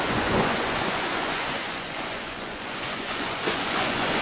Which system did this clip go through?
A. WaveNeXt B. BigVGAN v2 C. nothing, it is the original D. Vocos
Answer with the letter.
D